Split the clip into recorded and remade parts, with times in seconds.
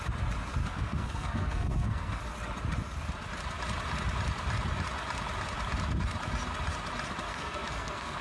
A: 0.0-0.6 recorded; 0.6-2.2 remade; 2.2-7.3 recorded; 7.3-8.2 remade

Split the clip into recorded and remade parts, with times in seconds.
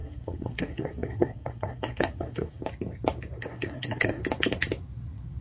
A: 0.0-2.6 remade; 2.6-3.4 recorded; 3.4-4.2 remade; 4.2-5.4 recorded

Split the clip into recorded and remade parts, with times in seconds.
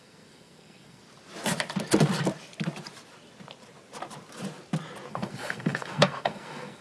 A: 0.0-1.0 remade; 1.0-5.1 recorded; 5.1-6.8 remade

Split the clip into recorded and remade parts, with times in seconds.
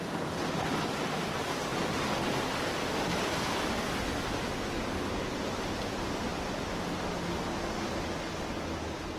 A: 0.0-9.2 recorded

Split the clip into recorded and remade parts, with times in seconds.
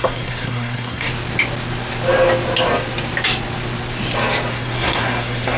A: 0.0-1.1 remade; 1.1-4.5 recorded; 4.5-5.6 remade